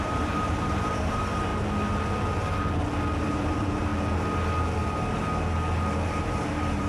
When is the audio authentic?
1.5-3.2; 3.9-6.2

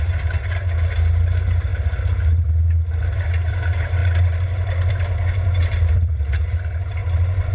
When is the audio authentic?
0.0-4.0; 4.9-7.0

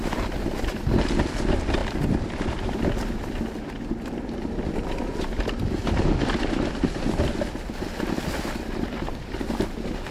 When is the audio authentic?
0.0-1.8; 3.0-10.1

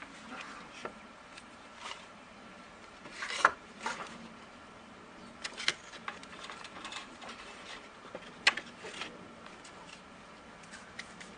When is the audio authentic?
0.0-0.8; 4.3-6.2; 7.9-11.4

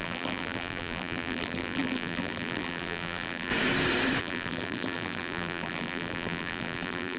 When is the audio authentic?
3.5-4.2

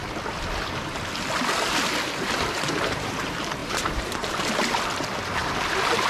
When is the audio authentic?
0.0-2.1; 5.4-6.1

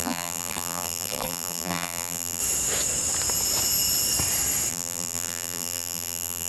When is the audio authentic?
2.4-4.7

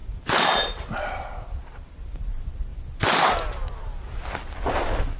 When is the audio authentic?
2.7-5.2